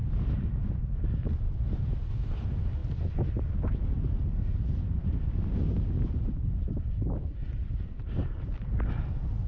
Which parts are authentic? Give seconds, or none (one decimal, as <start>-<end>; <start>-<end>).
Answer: 0.0-9.5